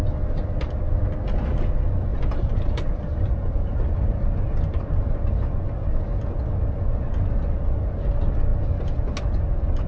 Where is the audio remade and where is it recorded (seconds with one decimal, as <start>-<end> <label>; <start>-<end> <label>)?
0.0-2.1 recorded; 2.1-4.3 remade; 4.3-9.9 recorded